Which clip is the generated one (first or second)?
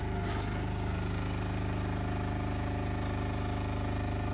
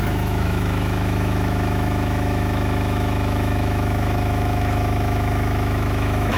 second